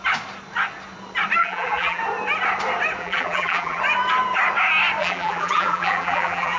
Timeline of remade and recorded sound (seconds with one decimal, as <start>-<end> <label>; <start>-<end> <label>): 0.0-1.4 recorded; 1.4-2.0 remade; 2.0-3.0 recorded; 3.0-3.8 remade; 3.8-5.0 recorded; 5.0-6.6 remade